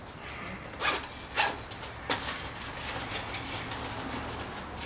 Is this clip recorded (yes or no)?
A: yes